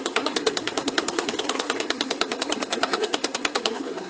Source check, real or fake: fake